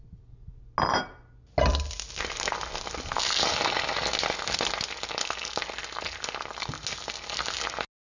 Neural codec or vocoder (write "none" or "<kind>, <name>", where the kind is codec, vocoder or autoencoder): none